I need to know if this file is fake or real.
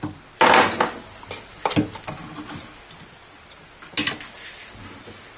real